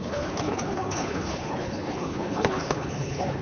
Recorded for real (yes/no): no